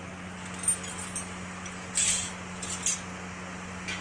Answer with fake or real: real